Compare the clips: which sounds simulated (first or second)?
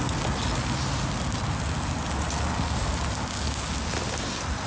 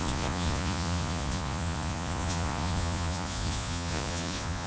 second